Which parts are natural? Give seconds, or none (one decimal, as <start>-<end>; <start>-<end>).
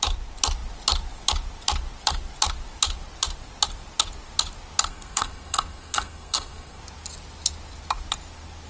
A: 0.0-4.9; 6.8-8.7